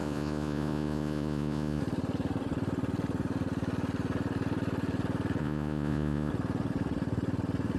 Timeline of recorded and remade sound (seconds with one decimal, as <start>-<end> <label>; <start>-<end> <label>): 0.0-1.8 remade; 1.8-5.4 recorded; 5.4-6.3 remade; 6.3-7.8 recorded